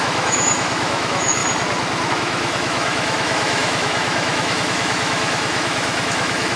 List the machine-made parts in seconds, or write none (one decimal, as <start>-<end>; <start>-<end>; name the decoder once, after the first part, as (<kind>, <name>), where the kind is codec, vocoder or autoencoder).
0.0-1.4 (autoencoder, DAC-VAE); 2.1-6.6